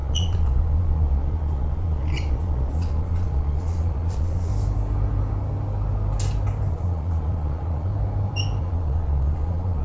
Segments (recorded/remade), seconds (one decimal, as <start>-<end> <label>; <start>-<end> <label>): 0.0-4.5 remade; 4.5-6.7 recorded; 6.7-7.9 remade; 7.9-8.6 recorded; 8.6-9.8 remade